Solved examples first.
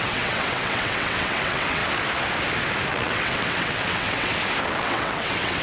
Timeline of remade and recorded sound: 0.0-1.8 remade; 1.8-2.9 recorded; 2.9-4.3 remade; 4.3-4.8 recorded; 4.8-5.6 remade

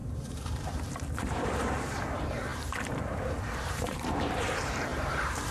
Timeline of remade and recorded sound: 0.0-5.5 remade

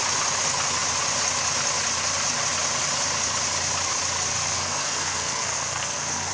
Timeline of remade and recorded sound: 0.0-4.3 recorded; 4.3-6.3 remade

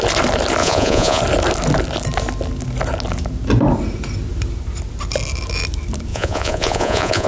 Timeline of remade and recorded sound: 0.0-0.6 recorded; 0.6-1.2 remade; 1.2-6.1 recorded; 6.1-7.3 remade

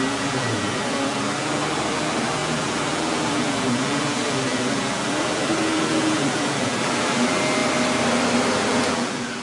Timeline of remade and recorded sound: 0.0-7.6 remade; 7.6-8.5 recorded; 8.5-9.4 remade

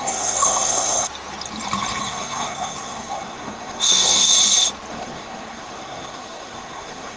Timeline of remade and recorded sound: 0.0-1.1 remade; 1.1-2.0 recorded; 2.0-4.3 remade; 4.3-4.9 recorded; 4.9-7.2 remade

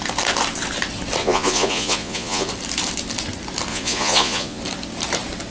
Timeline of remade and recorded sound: 0.0-1.2 recorded; 1.2-2.5 remade; 2.5-3.7 recorded; 3.7-4.6 remade; 4.6-5.5 recorded

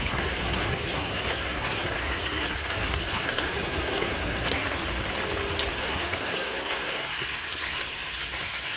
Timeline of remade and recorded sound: 0.0-4.8 remade; 4.8-5.7 recorded; 5.7-8.8 remade